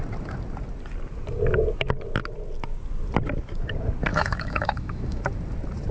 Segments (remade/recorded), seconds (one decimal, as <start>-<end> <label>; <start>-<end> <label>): 0.0-4.1 recorded; 4.1-5.2 remade; 5.2-5.9 recorded